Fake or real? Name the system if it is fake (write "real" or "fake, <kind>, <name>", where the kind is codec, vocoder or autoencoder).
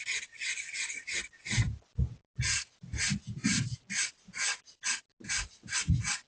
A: real